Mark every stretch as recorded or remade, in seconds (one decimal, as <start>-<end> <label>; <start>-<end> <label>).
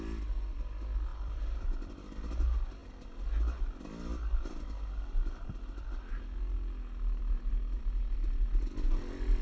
0.0-1.1 recorded; 1.1-1.9 remade; 1.9-9.4 recorded